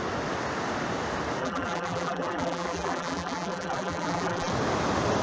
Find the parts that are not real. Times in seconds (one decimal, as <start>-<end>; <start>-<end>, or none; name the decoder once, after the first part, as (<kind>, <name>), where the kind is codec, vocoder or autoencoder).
1.4-4.5 (vocoder, BigVGAN v2)